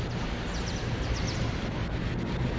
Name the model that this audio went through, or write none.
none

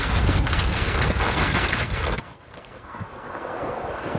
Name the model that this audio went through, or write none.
codec, SNAC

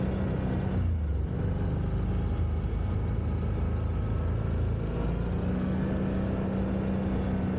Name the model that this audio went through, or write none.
none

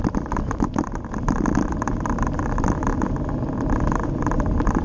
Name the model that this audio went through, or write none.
vocoder, BigVGAN v2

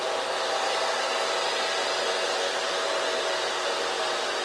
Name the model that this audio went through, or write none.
none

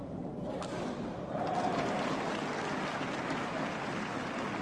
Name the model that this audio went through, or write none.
none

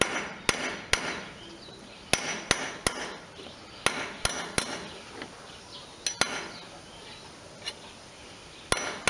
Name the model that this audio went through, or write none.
none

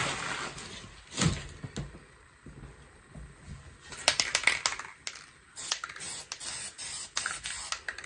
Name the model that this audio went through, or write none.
none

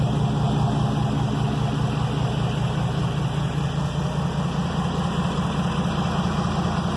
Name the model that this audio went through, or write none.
none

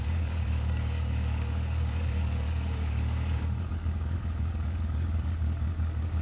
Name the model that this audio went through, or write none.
codec, DAC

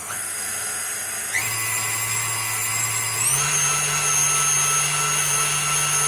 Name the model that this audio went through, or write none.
none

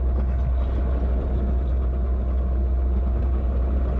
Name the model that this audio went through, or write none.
none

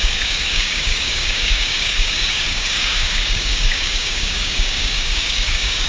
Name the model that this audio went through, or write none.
codec, DAC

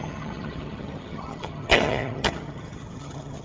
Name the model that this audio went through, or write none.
vocoder, HiFi-GAN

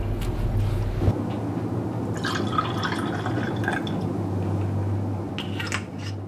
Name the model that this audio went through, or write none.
none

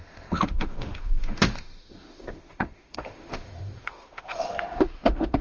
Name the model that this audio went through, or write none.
autoencoder, DAC-VAE